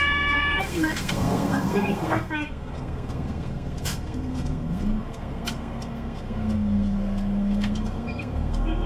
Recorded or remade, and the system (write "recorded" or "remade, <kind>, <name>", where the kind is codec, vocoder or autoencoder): remade, codec, SNAC